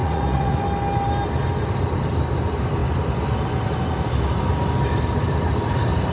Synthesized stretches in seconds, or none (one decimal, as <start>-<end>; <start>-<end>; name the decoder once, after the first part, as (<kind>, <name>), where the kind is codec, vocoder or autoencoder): 0.0-0.6 (vocoder, Vocos)